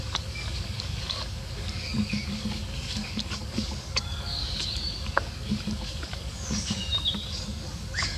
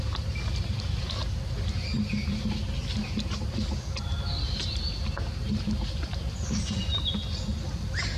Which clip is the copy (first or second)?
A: first